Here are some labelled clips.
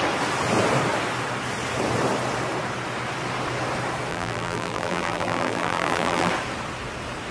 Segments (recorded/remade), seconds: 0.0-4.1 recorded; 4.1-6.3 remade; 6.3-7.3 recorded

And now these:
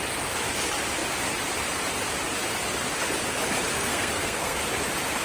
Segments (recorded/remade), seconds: 0.0-3.7 recorded; 3.7-4.6 remade; 4.6-5.2 recorded